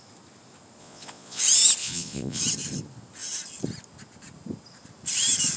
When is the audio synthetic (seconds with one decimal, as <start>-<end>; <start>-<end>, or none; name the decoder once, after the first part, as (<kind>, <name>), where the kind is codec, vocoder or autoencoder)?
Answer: 0.8-1.4 (vocoder, Vocos); 1.8-2.4